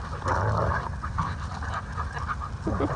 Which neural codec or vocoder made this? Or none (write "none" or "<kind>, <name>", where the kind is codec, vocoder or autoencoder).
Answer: none